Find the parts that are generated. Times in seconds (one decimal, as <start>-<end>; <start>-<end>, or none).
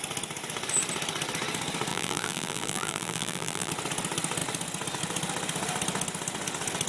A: 1.9-3.7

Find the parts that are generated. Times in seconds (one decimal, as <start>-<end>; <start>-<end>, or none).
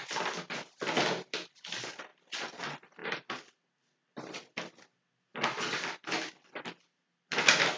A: 2.1-2.6; 3.0-3.7